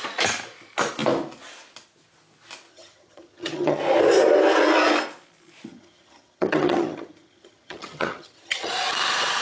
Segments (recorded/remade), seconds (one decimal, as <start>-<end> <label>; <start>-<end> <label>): 0.0-2.7 recorded; 2.7-3.8 remade; 3.8-5.7 recorded; 5.7-8.7 remade; 8.7-9.4 recorded